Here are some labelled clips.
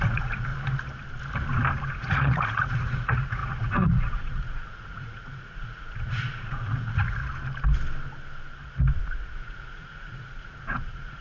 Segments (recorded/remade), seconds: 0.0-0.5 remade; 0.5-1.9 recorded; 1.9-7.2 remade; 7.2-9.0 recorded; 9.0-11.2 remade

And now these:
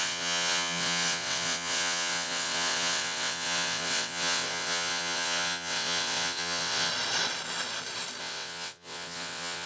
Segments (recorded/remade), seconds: 0.0-6.9 remade; 6.9-8.2 recorded; 8.2-9.7 remade

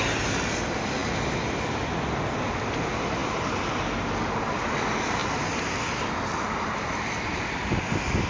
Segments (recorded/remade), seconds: 0.0-8.3 recorded

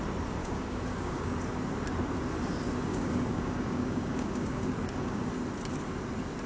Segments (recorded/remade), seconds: 0.0-0.4 recorded; 0.4-1.4 remade; 1.4-2.9 recorded; 2.9-5.3 remade; 5.3-6.5 recorded

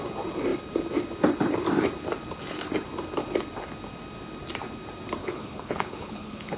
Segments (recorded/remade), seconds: 0.0-5.2 recorded; 5.2-6.6 remade

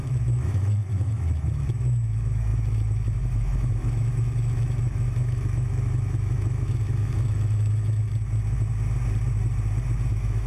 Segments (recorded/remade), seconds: 0.0-8.1 remade; 8.1-10.1 recorded; 10.1-10.5 remade

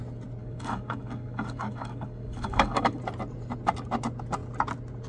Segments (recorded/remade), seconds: 0.0-0.4 recorded; 0.4-3.0 remade; 3.0-5.1 recorded